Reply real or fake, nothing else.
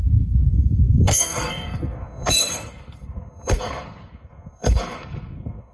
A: fake